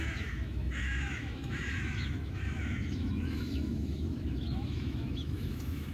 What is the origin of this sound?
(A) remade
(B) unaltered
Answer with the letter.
A